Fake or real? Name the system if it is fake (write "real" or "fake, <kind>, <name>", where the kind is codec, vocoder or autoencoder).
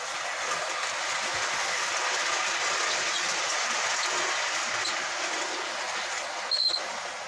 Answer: real